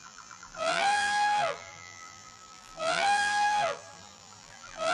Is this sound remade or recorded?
remade